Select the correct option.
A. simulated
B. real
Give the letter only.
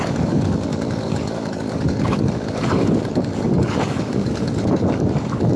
A